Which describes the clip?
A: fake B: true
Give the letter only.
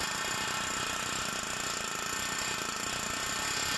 B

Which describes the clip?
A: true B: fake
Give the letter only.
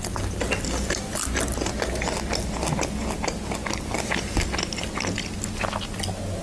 A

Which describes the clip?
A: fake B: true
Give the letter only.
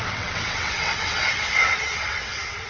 A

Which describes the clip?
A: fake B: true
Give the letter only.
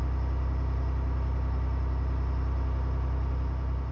B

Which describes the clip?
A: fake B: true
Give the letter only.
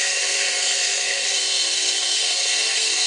A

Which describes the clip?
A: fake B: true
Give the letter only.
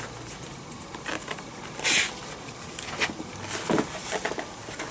B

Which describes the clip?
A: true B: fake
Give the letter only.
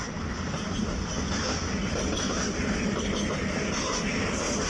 A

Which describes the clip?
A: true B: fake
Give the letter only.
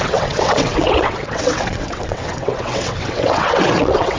B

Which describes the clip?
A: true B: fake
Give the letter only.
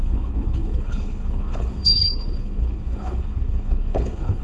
B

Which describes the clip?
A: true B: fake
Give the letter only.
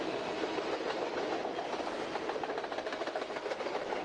A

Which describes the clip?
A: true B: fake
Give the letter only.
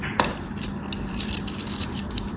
B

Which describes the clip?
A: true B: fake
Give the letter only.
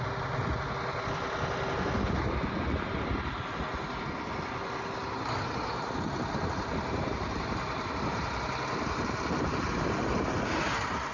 A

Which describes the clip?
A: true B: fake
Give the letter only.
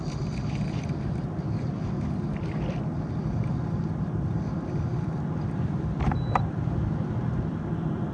A